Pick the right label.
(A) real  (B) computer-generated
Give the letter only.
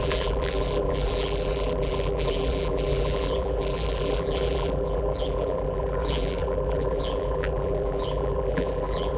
B